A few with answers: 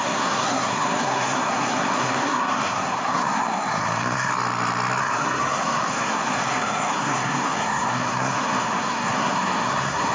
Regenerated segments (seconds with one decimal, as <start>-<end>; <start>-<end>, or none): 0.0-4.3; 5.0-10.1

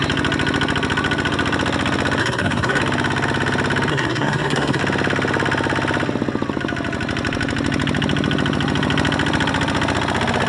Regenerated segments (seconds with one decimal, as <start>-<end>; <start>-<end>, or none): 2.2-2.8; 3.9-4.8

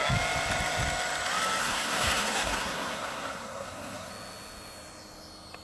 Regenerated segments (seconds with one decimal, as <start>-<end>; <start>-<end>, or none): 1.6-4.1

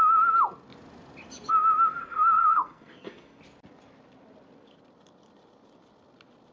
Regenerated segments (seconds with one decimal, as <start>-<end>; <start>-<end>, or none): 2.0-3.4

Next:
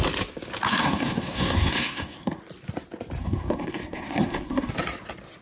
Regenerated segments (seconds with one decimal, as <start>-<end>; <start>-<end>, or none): 0.7-2.4; 3.2-4.7